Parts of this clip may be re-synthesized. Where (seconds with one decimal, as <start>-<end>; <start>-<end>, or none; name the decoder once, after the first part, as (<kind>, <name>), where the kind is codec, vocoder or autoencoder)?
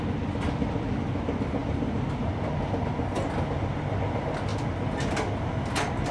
none